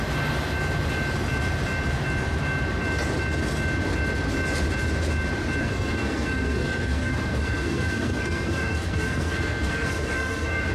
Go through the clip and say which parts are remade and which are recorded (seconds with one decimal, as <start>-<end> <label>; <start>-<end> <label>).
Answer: 0.0-5.6 recorded; 5.6-10.7 remade